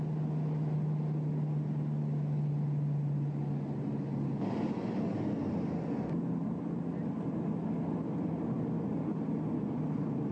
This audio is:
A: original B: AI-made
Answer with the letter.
A